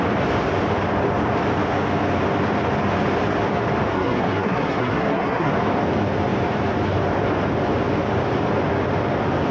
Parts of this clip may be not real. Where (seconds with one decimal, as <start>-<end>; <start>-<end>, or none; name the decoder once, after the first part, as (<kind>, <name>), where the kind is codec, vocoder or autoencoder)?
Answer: 3.9-5.5 (codec, SNAC)